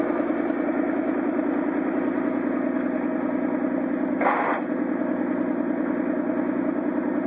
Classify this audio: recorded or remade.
recorded